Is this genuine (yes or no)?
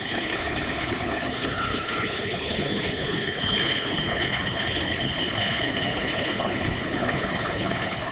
no